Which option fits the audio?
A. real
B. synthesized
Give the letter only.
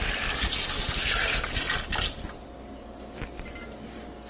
A